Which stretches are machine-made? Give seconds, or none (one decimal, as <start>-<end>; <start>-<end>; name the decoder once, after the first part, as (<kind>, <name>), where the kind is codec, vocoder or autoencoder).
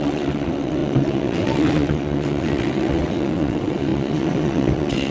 0.0-5.1 (vocoder, WaveNeXt)